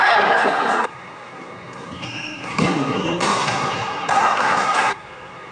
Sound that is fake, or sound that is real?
fake